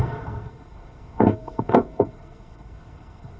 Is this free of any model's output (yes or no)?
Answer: no